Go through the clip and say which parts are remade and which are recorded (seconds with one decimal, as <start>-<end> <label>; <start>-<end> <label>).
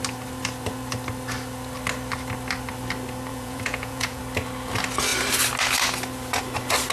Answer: 0.0-3.3 recorded; 3.3-4.2 remade; 4.2-6.9 recorded